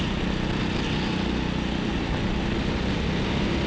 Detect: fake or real real